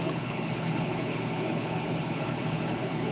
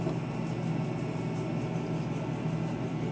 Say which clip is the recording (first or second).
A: second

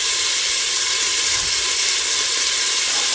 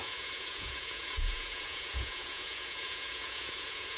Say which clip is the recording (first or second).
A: first